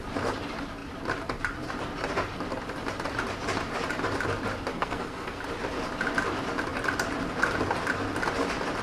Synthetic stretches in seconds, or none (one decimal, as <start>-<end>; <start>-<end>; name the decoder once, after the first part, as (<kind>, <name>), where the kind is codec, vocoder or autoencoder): 4.7-5.4 (codec, SNAC)